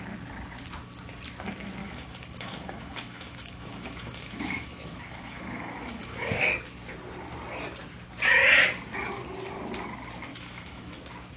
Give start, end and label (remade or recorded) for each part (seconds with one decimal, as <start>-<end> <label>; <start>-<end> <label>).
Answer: 0.0-1.8 recorded; 1.8-6.5 remade; 6.5-10.3 recorded; 10.3-11.0 remade; 11.0-11.4 recorded